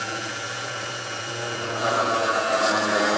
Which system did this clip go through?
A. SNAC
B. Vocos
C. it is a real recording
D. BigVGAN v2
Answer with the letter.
B